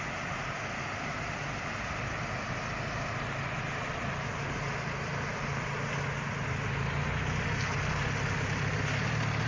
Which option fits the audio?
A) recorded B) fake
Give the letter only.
A